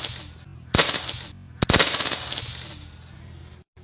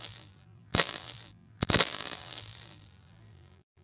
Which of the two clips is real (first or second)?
first